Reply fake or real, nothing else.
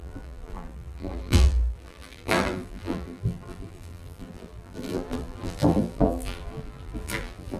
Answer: fake